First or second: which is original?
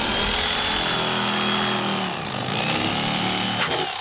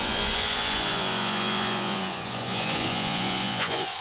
first